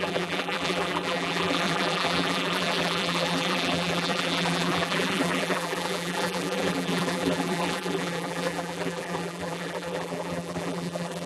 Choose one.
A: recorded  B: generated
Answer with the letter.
B